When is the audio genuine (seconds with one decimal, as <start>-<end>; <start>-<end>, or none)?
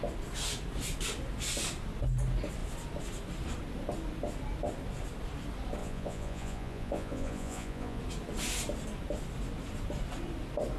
0.0-5.8; 8.0-10.8